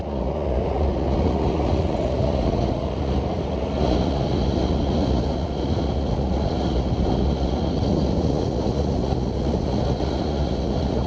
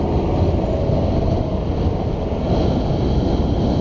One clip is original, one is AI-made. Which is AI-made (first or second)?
first